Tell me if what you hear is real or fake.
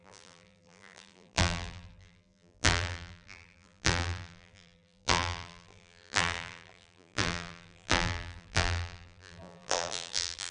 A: fake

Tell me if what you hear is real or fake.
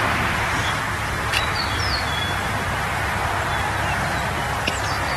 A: real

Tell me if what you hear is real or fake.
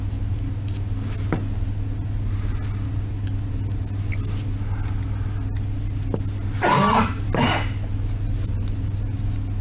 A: real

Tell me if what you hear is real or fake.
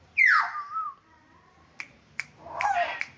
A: fake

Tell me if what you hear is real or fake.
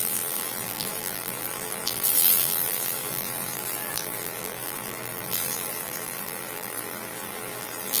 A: fake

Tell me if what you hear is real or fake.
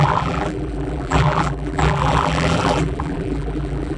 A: fake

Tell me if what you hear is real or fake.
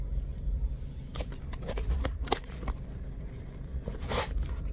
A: fake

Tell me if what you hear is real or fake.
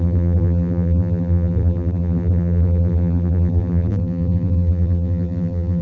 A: fake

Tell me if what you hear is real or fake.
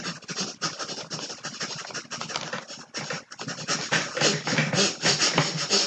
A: real